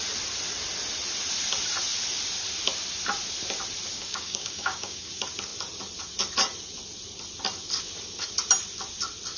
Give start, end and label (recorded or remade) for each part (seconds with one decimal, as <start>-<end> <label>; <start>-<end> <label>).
0.0-3.9 recorded; 3.9-5.1 remade; 5.1-9.4 recorded